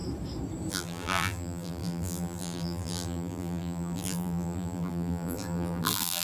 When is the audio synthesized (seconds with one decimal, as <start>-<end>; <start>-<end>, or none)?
0.7-6.2